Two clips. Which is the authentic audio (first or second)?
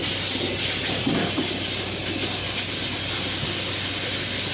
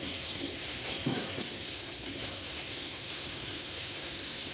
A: first